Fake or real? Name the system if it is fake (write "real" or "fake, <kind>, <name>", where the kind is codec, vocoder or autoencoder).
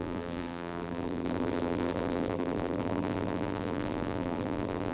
fake, vocoder, BigVGAN v2